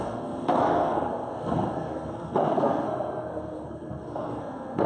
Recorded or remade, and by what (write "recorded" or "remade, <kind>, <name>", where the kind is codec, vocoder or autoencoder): remade, codec, SNAC